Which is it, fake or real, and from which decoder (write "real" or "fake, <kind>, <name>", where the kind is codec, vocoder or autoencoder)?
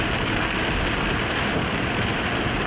real